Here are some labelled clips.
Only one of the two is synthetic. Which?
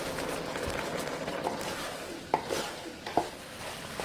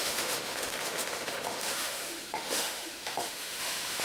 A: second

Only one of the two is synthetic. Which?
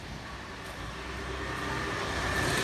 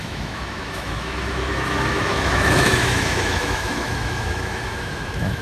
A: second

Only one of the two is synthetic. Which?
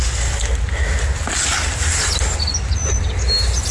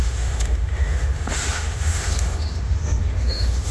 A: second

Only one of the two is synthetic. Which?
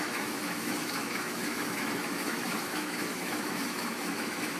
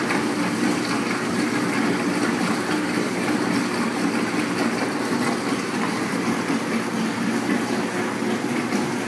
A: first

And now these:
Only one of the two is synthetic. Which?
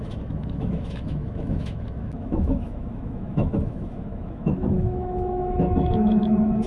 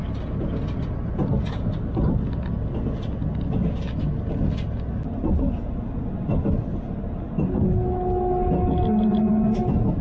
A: first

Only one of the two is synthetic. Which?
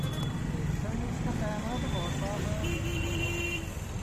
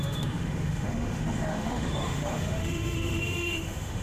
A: second